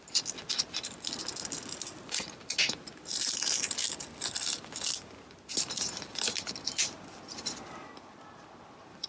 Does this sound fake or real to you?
real